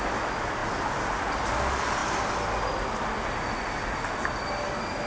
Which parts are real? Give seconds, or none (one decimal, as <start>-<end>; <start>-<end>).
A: 0.0-5.1